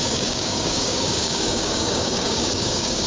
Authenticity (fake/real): fake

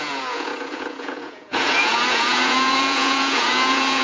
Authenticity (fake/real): fake